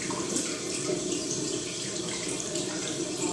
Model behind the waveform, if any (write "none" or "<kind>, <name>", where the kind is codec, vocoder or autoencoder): vocoder, BigVGAN v2